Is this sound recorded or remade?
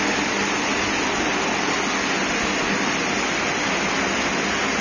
recorded